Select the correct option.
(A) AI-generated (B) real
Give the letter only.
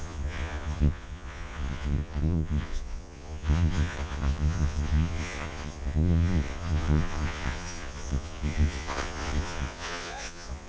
A